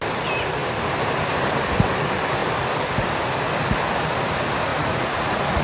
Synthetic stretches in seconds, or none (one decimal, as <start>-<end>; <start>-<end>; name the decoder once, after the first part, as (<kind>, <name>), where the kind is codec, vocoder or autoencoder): 4.7-5.6 (vocoder, Vocos)